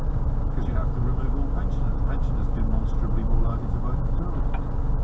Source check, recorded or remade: recorded